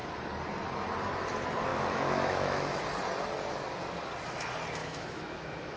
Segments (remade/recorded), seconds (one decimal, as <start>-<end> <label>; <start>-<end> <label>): 0.0-1.7 recorded; 1.7-2.8 remade; 2.8-4.8 recorded; 4.8-5.8 remade